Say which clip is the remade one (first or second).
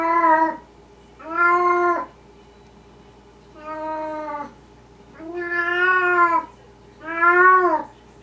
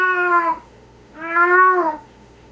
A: second